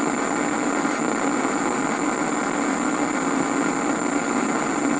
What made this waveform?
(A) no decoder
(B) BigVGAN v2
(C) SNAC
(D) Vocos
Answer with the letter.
A